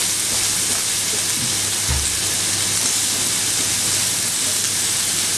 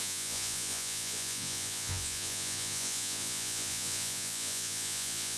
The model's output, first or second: second